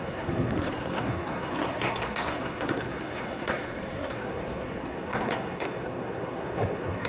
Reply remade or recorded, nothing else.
remade